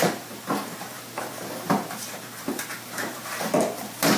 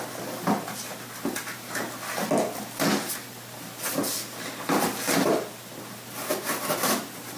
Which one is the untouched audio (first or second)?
second